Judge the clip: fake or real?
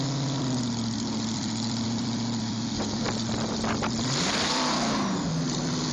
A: fake